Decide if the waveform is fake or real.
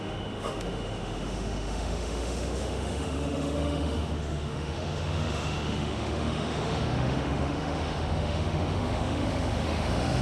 fake